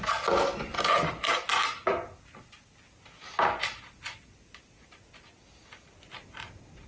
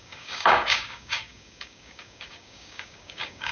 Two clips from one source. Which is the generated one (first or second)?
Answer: second